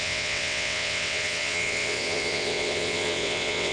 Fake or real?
fake